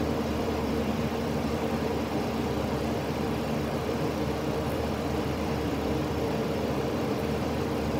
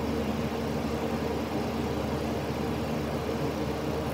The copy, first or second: first